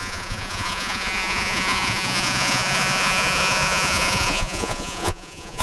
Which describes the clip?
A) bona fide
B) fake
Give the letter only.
B